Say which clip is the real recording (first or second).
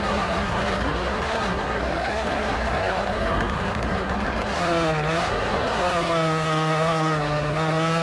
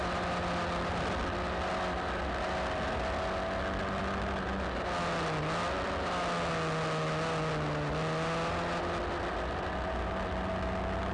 second